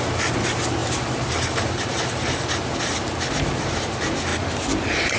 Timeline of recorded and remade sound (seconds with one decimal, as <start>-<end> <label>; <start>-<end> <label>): 0.0-5.2 recorded